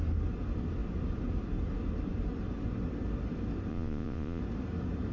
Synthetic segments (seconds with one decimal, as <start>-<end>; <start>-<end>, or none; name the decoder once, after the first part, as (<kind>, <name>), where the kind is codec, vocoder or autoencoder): 3.7-4.4 (vocoder, Vocos)